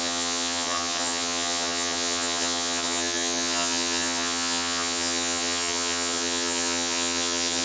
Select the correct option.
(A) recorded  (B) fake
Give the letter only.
B